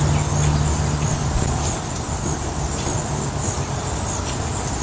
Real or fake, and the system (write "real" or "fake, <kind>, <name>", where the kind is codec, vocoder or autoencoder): real